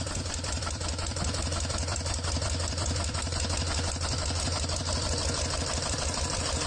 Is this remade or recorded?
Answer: remade